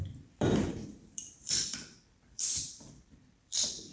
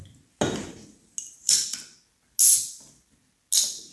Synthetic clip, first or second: first